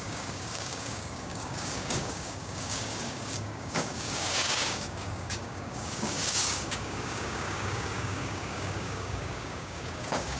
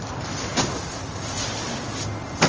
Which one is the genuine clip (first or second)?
second